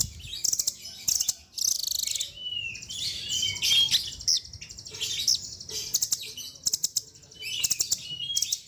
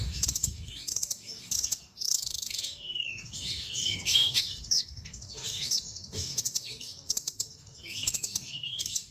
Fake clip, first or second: second